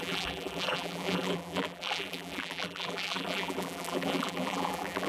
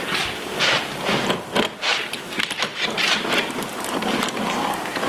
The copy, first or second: first